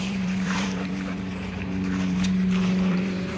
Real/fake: fake